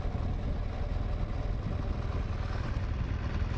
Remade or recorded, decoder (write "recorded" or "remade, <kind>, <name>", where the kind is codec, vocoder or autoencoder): recorded